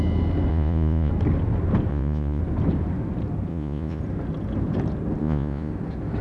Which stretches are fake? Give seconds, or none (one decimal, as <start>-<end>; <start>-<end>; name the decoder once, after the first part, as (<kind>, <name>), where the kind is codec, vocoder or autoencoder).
0.5-1.1 (vocoder, Vocos); 1.9-2.4; 3.5-4.0; 5.2-5.7